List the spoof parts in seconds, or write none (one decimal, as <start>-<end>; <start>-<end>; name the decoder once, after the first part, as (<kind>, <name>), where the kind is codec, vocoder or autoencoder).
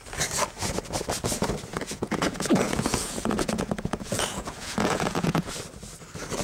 1.7-5.5 (vocoder, Vocos)